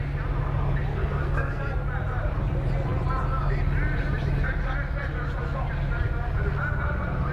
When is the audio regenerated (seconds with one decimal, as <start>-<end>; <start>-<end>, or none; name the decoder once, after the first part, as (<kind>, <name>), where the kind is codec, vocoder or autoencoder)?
0.9-1.6 (codec, SNAC)